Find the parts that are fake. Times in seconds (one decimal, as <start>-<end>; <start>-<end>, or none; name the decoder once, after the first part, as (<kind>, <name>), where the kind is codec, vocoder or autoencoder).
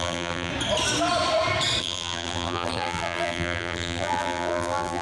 0.0-0.5 (vocoder, BigVGAN v2); 1.8-5.0